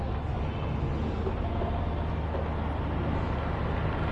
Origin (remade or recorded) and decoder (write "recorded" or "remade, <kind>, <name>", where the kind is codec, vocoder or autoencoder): recorded